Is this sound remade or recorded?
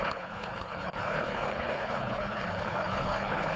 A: remade